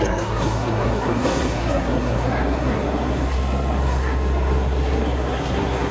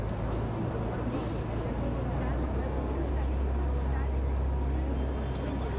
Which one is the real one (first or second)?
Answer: second